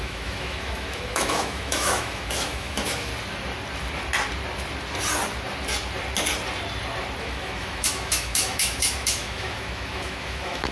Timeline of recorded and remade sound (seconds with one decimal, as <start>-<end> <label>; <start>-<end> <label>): 0.0-3.1 remade; 3.1-7.2 recorded; 7.2-10.7 remade